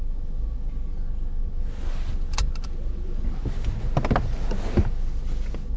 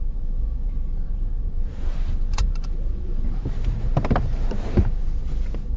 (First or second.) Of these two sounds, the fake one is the second